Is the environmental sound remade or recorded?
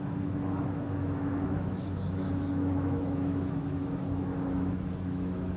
remade